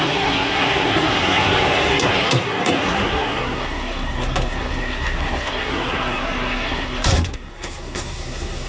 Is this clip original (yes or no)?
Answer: no